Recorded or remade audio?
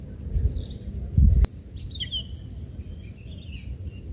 recorded